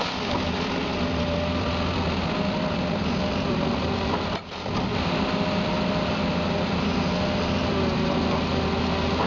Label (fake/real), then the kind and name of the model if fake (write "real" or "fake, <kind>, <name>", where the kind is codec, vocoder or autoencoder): real